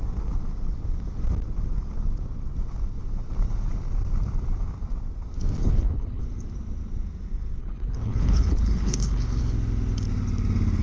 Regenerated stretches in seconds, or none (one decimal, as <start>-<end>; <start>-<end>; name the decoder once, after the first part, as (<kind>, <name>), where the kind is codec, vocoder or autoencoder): 5.6-6.2 (codec, HILCodec); 7.6-9.4